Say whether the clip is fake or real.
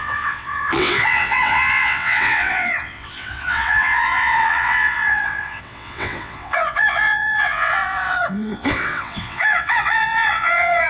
fake